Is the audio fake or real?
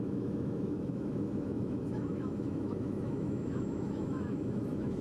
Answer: fake